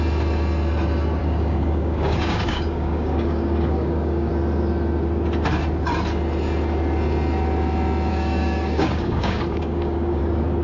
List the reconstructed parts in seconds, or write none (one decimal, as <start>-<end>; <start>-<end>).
1.2-4.3; 8.1-10.2